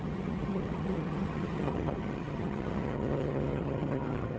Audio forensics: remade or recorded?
remade